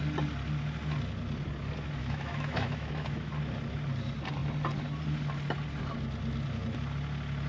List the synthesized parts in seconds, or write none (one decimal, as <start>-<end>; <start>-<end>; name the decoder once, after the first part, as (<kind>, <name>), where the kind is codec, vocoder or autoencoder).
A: 2.0-3.3 (autoencoder, DAC-VAE)